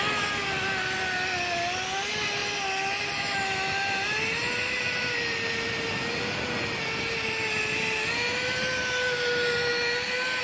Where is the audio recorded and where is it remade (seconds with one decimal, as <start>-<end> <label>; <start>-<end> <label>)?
0.0-10.4 recorded